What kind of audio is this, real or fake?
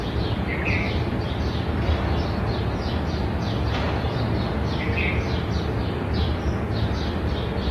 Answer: real